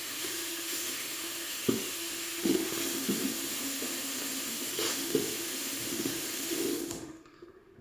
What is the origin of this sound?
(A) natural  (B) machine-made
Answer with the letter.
B